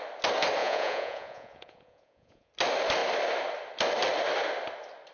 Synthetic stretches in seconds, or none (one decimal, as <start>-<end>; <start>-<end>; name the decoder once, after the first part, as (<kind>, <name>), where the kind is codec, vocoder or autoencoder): 0.6-2.5 (vocoder, Vocos)